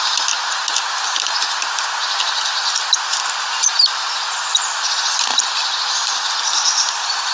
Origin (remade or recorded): recorded